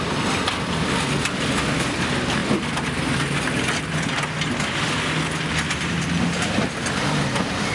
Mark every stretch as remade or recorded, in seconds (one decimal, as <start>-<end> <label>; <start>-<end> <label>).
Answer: 0.0-7.7 recorded

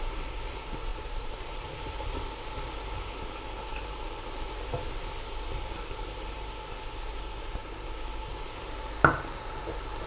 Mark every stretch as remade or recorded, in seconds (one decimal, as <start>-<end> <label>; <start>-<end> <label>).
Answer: 0.0-0.9 recorded; 0.9-1.5 remade; 1.5-10.1 recorded

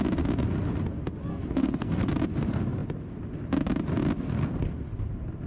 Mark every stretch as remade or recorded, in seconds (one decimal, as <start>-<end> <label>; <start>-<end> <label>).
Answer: 0.0-1.3 recorded; 1.3-2.1 remade; 2.1-5.5 recorded

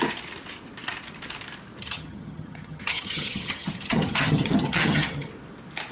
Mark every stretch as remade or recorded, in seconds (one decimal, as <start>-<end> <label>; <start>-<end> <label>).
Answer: 0.0-1.8 recorded; 1.8-5.3 remade; 5.3-5.9 recorded